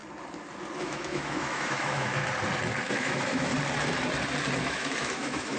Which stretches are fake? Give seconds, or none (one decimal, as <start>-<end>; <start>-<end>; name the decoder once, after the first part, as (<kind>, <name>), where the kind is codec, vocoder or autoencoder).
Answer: 0.8-2.2 (autoencoder, DAC-VAE); 2.9-3.5; 4.6-5.6